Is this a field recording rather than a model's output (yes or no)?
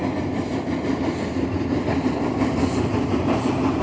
yes